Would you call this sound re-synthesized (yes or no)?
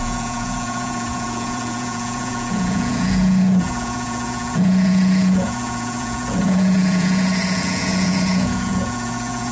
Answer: yes